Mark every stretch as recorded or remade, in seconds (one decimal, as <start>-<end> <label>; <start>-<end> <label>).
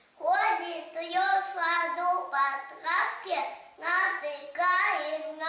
0.0-5.5 recorded